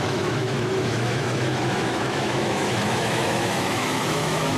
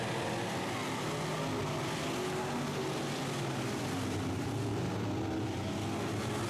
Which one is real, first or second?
second